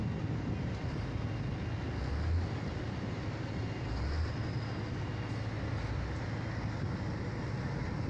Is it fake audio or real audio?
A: real